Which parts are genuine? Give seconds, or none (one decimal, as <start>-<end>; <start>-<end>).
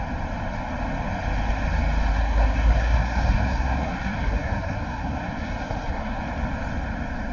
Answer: 0.0-2.1; 6.2-7.3